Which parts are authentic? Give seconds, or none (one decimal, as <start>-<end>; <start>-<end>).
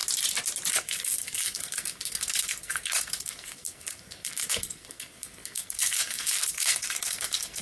0.0-0.7